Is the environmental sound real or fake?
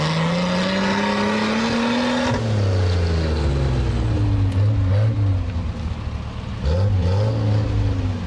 real